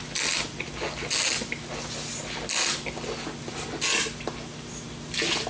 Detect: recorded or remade recorded